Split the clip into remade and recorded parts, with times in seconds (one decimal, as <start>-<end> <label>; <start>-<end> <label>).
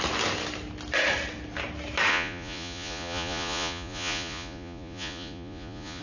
0.0-2.1 recorded; 2.1-6.0 remade